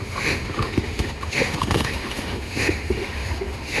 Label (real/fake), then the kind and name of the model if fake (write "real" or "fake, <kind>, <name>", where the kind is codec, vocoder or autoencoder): fake, autoencoder, DAC-VAE